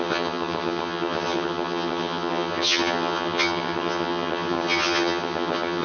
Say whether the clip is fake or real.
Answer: fake